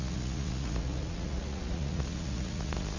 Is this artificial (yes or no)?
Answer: yes